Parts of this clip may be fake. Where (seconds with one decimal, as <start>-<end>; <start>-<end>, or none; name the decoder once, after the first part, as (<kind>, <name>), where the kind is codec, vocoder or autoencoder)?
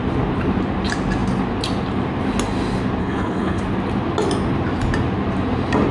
3.0-3.6 (codec, HILCodec)